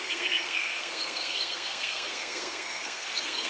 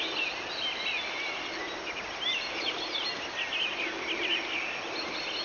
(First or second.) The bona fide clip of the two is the second